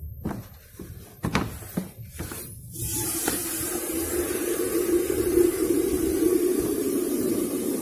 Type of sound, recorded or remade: remade